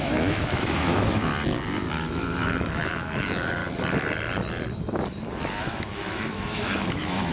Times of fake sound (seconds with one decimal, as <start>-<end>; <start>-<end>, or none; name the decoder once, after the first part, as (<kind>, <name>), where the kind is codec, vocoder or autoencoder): 0.0-1.3 (autoencoder, DAC-VAE); 1.9-3.6; 5.6-7.3

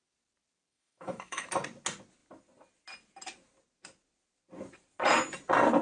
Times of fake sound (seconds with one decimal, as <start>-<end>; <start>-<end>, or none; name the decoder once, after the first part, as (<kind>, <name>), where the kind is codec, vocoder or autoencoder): 0.7-1.5 (autoencoder, DAC-VAE)

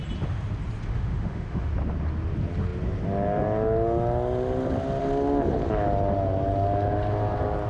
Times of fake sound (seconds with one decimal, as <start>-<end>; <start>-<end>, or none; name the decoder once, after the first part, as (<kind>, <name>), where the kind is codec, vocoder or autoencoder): 0.9-1.7 (autoencoder, DAC-VAE)

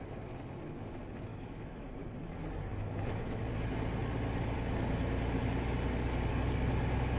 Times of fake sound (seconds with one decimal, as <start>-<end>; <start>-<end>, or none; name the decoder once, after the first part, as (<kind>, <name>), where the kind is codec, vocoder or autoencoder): 1.3-1.9 (autoencoder, DAC-VAE); 2.7-3.4

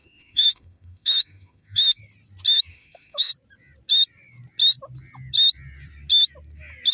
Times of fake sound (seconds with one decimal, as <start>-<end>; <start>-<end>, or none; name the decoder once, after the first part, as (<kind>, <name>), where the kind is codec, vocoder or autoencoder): 0.0-2.0 (autoencoder, DAC-VAE); 2.7-3.3

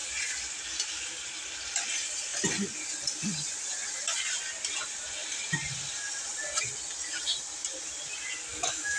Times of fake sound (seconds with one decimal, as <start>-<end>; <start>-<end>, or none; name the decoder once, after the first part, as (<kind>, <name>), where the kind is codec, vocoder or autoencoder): 8.5-9.0 (autoencoder, DAC-VAE)

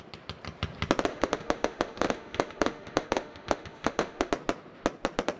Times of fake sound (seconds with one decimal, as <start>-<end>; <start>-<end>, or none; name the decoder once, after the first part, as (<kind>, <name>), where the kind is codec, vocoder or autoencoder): 1.1-4.3 (autoencoder, DAC-VAE)